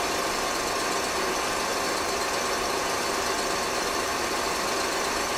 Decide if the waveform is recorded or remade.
recorded